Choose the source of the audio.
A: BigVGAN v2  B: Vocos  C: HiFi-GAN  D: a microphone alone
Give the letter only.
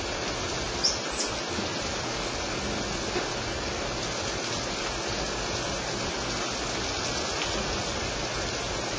D